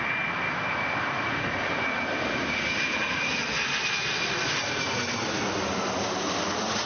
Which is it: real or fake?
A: real